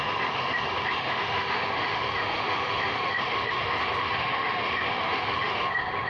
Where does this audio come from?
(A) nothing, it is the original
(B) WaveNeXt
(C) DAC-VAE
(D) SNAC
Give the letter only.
C